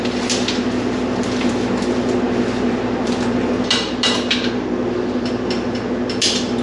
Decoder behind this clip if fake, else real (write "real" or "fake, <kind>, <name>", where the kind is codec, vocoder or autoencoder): real